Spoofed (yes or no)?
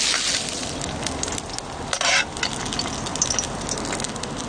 no